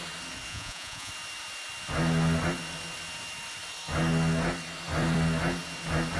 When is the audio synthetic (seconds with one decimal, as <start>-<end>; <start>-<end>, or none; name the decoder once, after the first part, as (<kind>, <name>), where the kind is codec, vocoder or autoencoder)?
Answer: 0.5-1.1 (vocoder, Vocos)